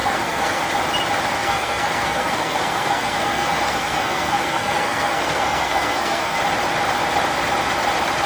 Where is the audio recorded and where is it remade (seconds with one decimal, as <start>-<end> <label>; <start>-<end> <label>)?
0.0-0.6 remade; 0.6-1.4 recorded; 1.4-6.4 remade; 6.4-8.3 recorded